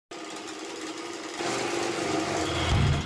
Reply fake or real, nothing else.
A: real